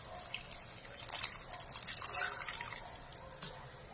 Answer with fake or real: real